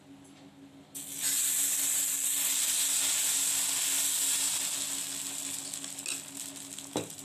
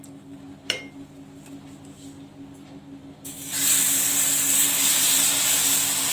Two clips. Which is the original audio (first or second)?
first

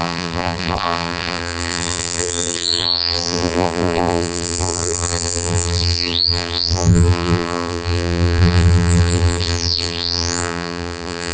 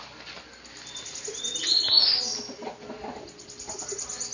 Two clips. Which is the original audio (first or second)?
second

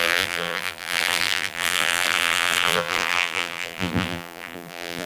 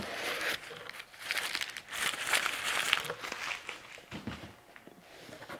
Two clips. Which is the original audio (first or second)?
second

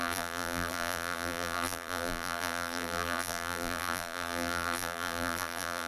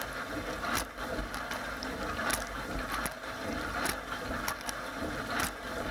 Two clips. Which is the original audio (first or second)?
second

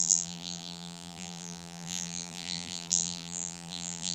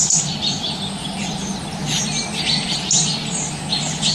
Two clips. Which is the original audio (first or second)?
second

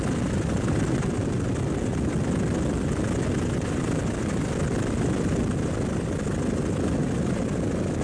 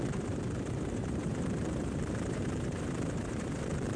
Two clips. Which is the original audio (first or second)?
first